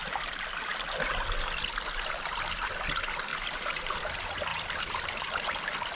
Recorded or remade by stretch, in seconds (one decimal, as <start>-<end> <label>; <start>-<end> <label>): 0.0-3.3 recorded; 3.3-4.0 remade; 4.0-4.5 recorded; 4.5-5.6 remade; 5.6-6.0 recorded

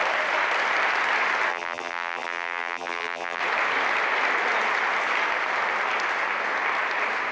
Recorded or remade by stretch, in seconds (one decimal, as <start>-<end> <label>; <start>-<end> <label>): 0.0-1.5 recorded; 1.5-3.4 remade; 3.4-7.3 recorded

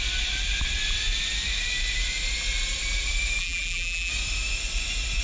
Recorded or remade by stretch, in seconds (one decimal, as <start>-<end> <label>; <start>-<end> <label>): 0.0-3.4 recorded; 3.4-4.1 remade; 4.1-5.2 recorded

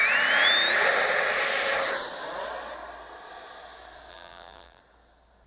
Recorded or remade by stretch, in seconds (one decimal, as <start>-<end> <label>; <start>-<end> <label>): 0.0-4.1 recorded; 4.1-4.8 remade; 4.8-5.5 recorded

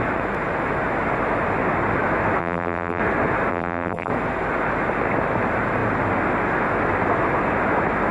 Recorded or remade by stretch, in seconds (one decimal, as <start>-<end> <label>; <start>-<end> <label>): 0.0-2.4 recorded; 2.4-3.0 remade; 3.0-3.5 recorded; 3.5-4.1 remade; 4.1-8.1 recorded

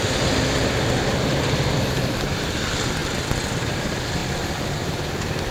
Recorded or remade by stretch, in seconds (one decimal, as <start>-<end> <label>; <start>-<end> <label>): 0.0-5.5 recorded

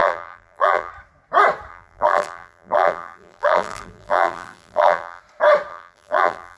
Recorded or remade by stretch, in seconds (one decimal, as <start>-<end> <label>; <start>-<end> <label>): 0.0-0.9 remade; 0.9-1.7 recorded; 1.7-5.2 remade; 5.2-5.7 recorded; 5.7-6.6 remade

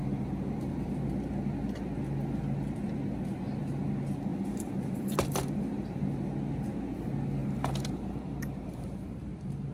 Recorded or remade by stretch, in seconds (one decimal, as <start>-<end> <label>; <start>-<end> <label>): 0.0-0.9 remade; 0.9-4.3 recorded; 4.3-6.0 remade; 6.0-7.4 recorded; 7.4-9.7 remade